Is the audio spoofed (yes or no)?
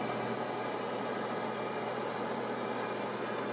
no